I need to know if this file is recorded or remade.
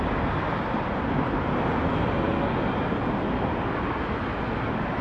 recorded